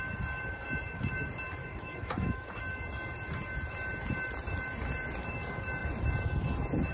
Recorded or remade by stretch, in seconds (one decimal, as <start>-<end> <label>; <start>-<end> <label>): 0.0-1.6 recorded; 1.6-2.6 remade; 2.6-6.9 recorded